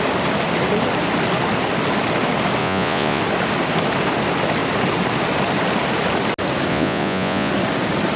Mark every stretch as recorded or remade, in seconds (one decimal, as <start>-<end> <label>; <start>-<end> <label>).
0.0-2.6 recorded; 2.6-3.2 remade; 3.2-6.7 recorded; 6.7-7.5 remade; 7.5-8.2 recorded